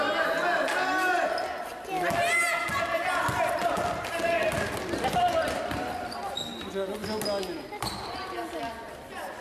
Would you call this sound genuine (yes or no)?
yes